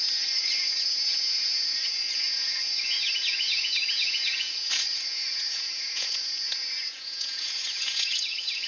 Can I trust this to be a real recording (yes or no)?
no